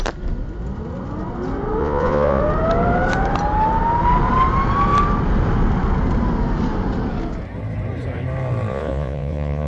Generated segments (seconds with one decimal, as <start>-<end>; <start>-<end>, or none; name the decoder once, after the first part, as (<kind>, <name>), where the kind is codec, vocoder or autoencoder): 1.8-2.4 (vocoder, Vocos); 8.7-9.7

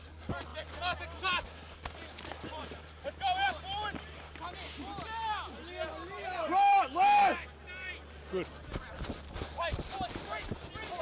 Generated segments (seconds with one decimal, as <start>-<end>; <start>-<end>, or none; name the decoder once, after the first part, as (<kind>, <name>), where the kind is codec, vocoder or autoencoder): none